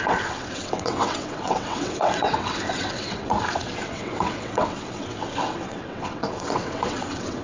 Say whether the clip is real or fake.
fake